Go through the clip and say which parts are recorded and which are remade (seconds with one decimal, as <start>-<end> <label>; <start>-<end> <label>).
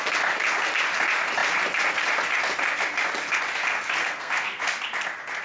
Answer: 0.0-4.0 recorded; 4.0-4.6 remade; 4.6-5.4 recorded